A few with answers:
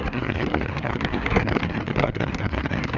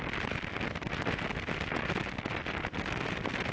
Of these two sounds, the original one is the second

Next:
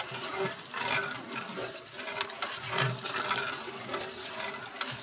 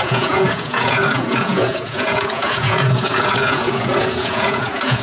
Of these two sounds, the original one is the first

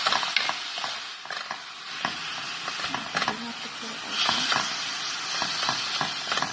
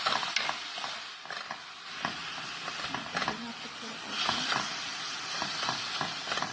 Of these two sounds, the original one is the first